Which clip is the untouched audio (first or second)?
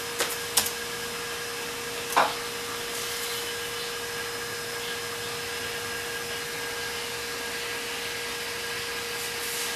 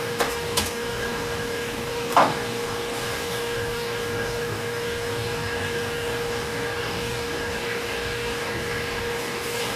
first